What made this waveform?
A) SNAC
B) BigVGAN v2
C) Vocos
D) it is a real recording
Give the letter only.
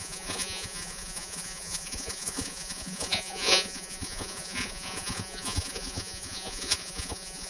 C